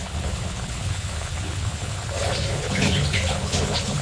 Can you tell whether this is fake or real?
fake